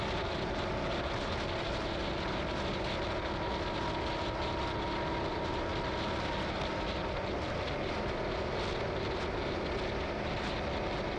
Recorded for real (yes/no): yes